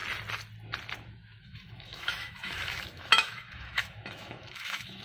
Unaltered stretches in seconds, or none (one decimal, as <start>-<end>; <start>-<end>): 0.0-1.1